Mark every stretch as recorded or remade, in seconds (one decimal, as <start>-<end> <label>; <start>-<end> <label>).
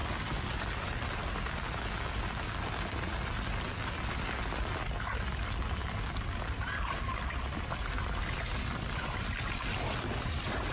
0.0-10.7 recorded